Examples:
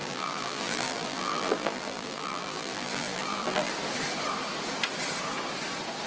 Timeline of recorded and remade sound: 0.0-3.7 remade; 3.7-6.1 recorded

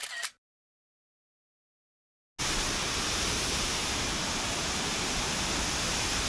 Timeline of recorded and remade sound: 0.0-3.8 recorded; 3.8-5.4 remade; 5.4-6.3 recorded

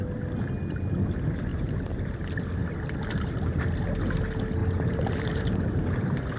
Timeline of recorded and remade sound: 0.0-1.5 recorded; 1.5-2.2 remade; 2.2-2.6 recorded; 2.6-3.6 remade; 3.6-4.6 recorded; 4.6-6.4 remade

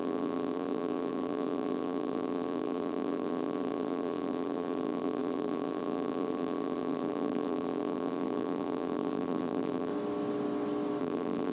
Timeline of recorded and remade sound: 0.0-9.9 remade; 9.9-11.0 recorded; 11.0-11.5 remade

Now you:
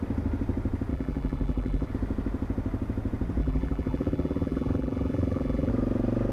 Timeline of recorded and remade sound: 0.0-0.9 recorded; 0.9-1.9 remade; 1.9-3.4 recorded; 3.4-5.7 remade; 5.7-6.3 recorded

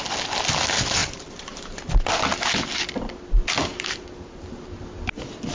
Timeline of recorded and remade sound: 0.0-1.0 recorded; 1.0-1.9 remade; 1.9-3.7 recorded; 3.7-4.8 remade; 4.8-5.5 recorded